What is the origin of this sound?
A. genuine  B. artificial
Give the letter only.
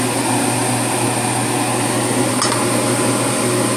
A